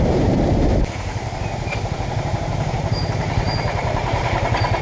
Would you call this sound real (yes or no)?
no